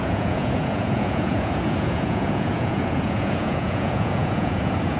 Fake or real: fake